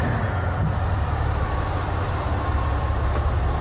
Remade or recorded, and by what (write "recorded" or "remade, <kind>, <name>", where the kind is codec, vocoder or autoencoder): recorded